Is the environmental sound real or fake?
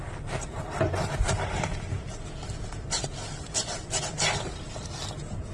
real